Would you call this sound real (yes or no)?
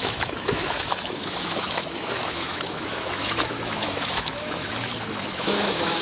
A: no